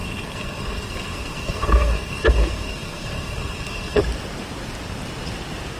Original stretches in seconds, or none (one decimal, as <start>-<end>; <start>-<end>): 4.0-5.8